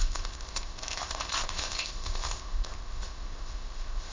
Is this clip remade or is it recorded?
remade